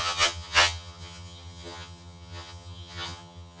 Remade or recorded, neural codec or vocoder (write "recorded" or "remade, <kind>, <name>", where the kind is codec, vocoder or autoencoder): remade, vocoder, HiFi-GAN